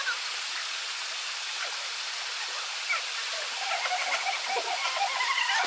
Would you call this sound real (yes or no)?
yes